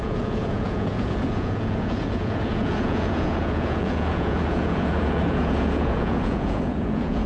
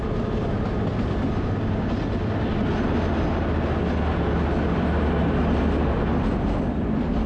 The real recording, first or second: second